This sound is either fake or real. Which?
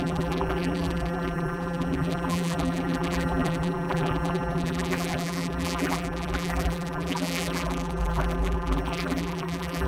fake